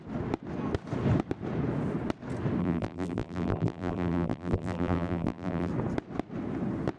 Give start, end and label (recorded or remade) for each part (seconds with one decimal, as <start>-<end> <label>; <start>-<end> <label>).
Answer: 0.0-2.6 recorded; 2.6-5.7 remade; 5.7-7.0 recorded